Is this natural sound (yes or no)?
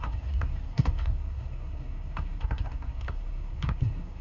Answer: no